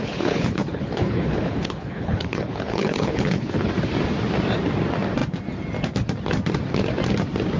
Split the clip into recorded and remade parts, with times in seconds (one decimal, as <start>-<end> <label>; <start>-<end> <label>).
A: 0.0-3.7 remade; 3.7-7.6 recorded